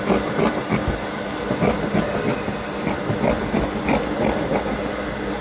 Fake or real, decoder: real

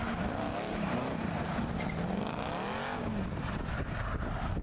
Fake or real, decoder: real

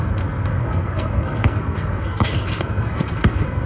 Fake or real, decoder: fake, codec, SNAC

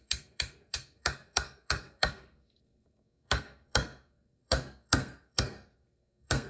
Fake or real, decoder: fake, codec, SNAC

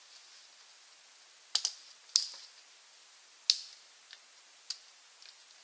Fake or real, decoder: real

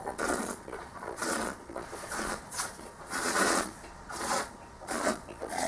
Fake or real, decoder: fake, vocoder, Vocos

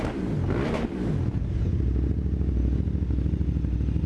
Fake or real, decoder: real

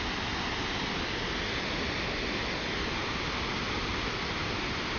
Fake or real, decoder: real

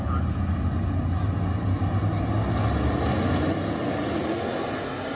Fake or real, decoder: real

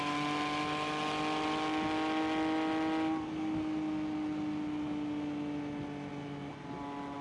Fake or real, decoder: real